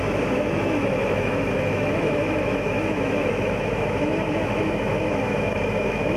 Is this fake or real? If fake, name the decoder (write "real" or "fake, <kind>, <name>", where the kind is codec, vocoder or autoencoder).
fake, autoencoder, DAC-VAE